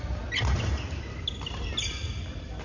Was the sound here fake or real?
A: real